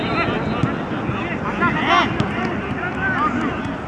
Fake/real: real